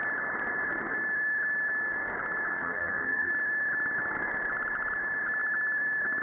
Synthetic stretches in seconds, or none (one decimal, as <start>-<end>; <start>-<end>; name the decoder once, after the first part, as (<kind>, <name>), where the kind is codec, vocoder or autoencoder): 2.5-3.3 (codec, DAC)